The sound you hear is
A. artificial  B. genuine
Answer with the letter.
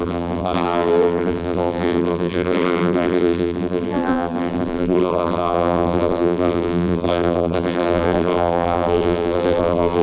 A